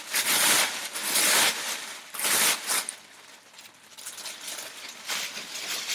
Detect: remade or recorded recorded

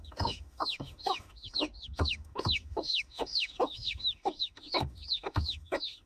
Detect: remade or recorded remade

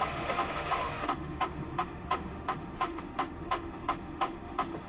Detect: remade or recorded remade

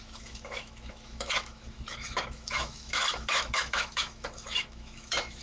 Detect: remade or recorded remade